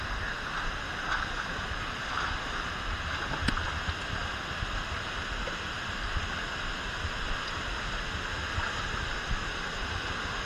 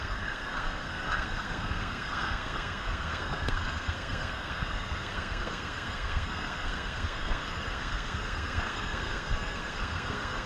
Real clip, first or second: first